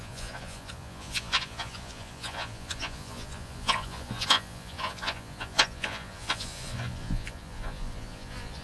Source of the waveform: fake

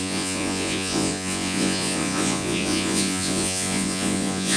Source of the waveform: fake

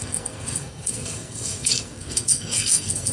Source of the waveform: fake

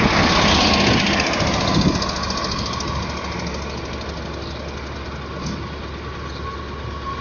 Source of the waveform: real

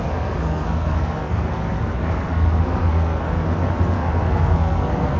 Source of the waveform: fake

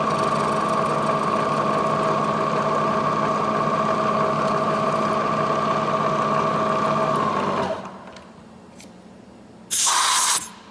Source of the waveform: real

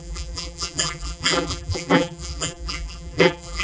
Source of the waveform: fake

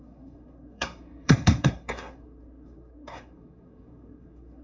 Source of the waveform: fake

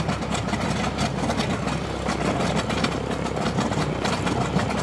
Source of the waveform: real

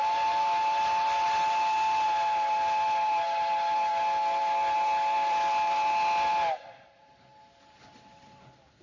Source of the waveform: real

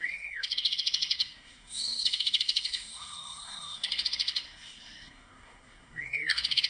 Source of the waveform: fake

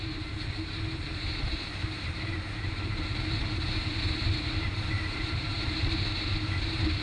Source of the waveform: fake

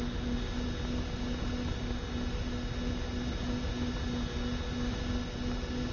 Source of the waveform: real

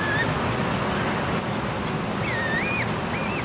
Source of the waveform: real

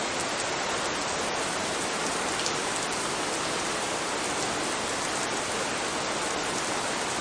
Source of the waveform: real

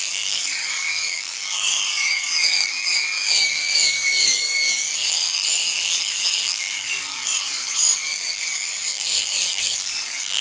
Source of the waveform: fake